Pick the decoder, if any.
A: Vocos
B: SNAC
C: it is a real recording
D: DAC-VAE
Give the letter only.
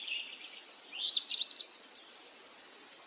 C